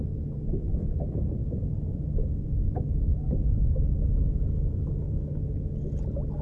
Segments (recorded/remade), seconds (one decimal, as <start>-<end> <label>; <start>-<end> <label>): 0.0-1.4 recorded; 1.4-5.2 remade; 5.2-6.4 recorded